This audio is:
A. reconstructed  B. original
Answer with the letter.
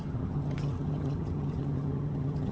A